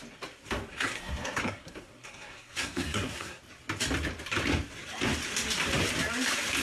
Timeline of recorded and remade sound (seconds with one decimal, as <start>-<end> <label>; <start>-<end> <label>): 0.0-0.7 recorded; 0.7-3.4 remade; 3.4-6.6 recorded